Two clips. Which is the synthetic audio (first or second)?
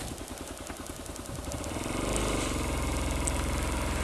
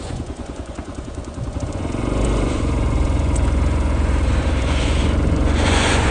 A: second